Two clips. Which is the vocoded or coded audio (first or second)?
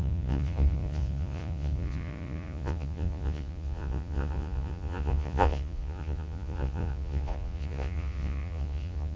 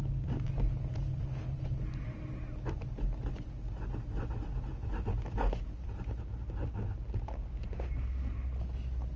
first